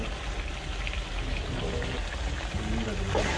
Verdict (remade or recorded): recorded